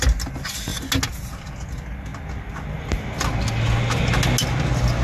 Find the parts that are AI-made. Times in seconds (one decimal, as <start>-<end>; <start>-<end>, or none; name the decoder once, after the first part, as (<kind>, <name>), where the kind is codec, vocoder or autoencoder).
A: none